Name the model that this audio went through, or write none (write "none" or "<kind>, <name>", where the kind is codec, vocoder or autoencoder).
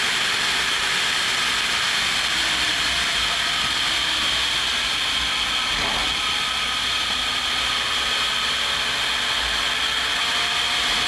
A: none